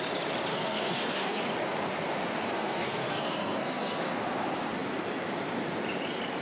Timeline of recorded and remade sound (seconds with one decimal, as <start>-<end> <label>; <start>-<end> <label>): 0.0-0.5 recorded; 0.5-1.4 remade; 1.4-2.5 recorded; 2.5-4.2 remade; 4.2-6.4 recorded